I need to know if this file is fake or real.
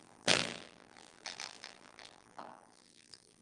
fake